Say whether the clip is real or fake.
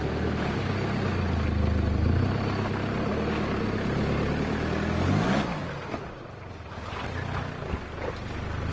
real